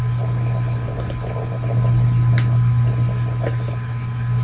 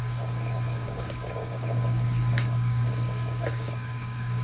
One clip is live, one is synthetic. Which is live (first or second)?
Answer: first